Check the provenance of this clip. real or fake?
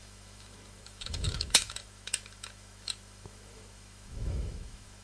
fake